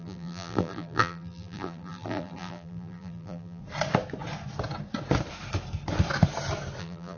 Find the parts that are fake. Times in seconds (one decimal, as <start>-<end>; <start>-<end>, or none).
0.0-3.6; 6.8-7.2